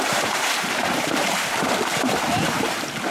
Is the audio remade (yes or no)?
yes